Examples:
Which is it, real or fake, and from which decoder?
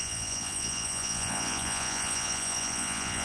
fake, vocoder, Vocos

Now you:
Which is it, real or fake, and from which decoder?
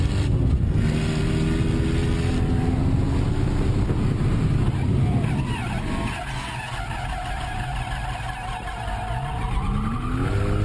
real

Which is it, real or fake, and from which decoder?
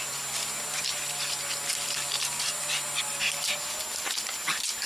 real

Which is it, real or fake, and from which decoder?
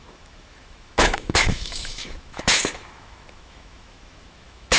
fake, autoencoder, DAC-VAE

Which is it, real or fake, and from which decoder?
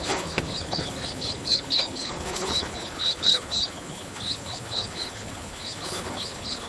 fake, codec, HILCodec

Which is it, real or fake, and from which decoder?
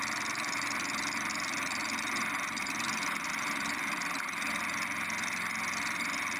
fake, vocoder, BigVGAN v2